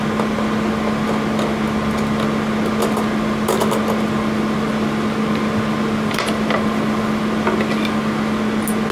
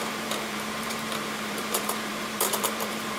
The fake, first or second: second